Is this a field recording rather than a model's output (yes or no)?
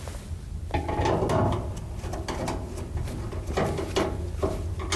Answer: yes